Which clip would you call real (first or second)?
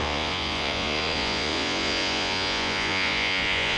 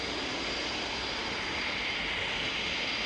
second